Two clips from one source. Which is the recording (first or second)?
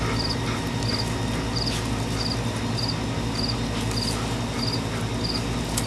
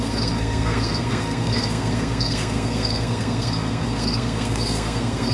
first